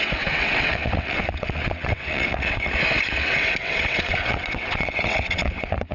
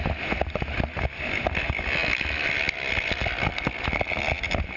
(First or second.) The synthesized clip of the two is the first